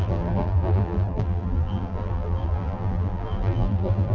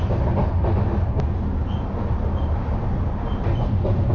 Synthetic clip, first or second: first